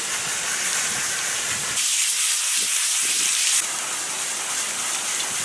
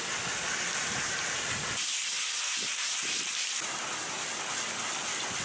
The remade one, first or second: first